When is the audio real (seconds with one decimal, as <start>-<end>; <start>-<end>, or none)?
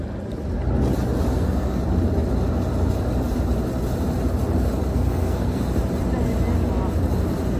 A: 0.0-1.3; 1.8-4.9; 5.6-7.6